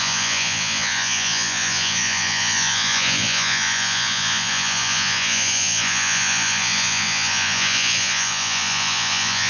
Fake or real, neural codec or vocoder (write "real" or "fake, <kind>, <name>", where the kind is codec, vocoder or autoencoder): fake, vocoder, Vocos